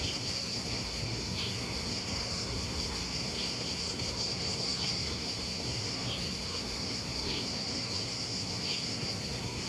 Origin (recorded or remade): remade